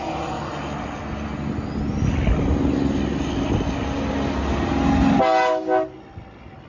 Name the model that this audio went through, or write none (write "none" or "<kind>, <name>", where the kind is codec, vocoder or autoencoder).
none